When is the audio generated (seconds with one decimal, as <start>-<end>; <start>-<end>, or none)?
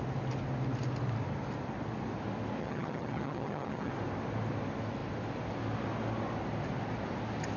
2.6-3.9